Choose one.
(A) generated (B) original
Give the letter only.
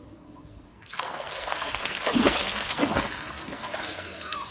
A